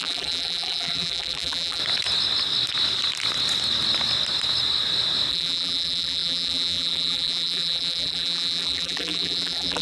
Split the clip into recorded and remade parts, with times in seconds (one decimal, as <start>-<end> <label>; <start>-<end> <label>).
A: 0.0-1.8 remade; 1.8-5.3 recorded; 5.3-9.8 remade